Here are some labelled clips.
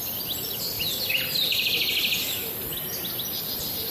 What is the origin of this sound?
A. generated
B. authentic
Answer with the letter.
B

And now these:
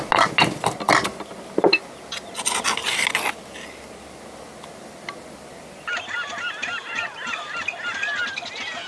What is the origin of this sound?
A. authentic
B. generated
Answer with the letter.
A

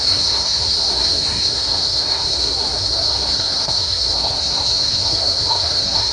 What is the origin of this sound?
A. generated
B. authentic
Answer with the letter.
A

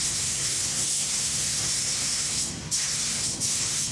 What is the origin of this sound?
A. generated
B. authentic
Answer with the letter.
A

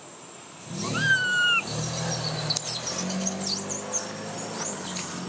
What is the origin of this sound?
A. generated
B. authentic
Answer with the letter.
B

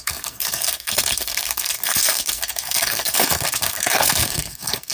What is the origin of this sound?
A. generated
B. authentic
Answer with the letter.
A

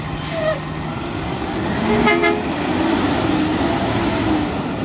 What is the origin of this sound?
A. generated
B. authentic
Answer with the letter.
B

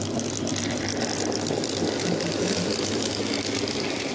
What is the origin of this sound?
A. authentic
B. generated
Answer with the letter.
A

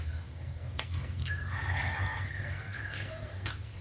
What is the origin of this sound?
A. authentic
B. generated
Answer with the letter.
B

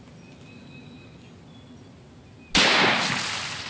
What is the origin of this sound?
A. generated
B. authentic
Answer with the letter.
B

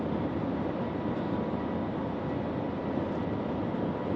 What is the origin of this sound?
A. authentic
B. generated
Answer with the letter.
A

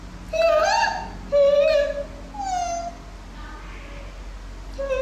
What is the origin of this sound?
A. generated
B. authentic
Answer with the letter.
B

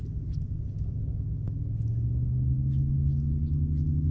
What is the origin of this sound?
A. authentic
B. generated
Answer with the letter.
A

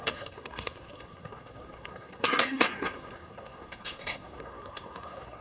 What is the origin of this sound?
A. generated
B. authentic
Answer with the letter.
A